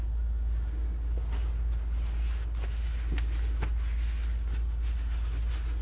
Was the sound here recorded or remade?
recorded